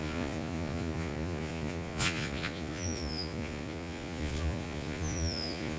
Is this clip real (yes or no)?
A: no